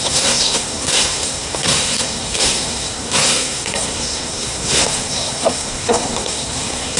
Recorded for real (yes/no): no